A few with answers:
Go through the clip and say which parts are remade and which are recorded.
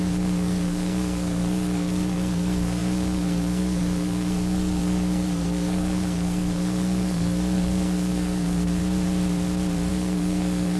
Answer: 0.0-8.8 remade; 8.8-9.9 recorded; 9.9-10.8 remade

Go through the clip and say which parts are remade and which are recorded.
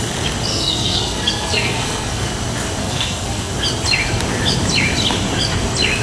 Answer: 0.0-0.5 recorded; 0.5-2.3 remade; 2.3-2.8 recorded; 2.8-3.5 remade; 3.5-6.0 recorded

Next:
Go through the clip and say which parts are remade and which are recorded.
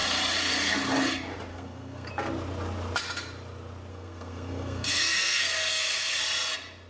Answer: 0.0-1.5 recorded; 1.5-2.1 remade; 2.1-3.9 recorded; 3.9-6.2 remade; 6.2-6.9 recorded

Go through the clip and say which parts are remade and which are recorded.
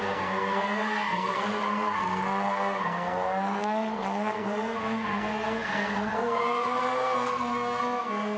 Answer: 0.0-8.4 remade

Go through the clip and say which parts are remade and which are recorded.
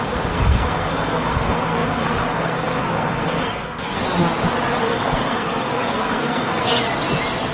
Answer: 0.0-4.0 remade; 4.0-4.8 recorded; 4.8-6.7 remade; 6.7-7.5 recorded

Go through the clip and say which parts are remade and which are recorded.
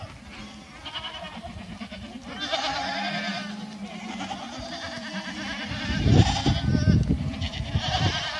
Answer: 0.0-8.4 recorded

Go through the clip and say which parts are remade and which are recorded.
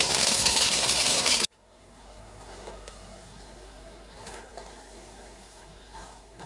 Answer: 0.0-6.5 remade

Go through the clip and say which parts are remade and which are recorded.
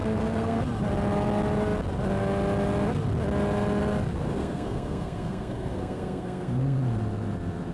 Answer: 0.0-0.6 remade; 0.6-4.4 recorded; 4.4-6.8 remade; 6.8-7.7 recorded